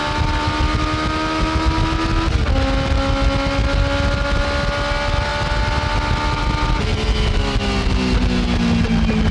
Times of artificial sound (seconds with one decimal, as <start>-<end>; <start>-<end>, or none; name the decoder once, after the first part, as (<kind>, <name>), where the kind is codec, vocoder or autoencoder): none